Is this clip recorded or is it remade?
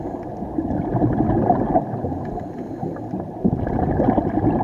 recorded